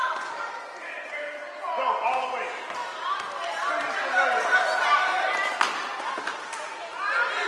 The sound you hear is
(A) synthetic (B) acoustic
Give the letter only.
B